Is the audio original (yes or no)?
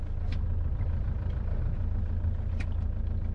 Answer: no